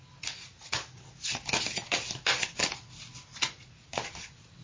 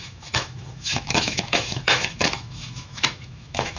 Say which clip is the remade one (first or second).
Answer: second